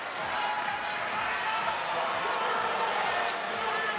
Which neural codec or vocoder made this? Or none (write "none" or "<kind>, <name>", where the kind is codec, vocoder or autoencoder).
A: none